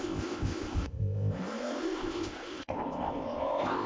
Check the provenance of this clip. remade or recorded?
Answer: remade